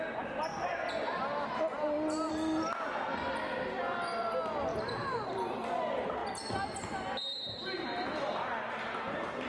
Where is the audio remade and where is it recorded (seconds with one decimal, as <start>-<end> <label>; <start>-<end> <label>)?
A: 0.0-9.5 recorded